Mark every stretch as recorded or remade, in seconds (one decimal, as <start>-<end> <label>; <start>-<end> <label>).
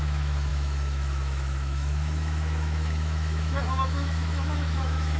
0.0-5.2 remade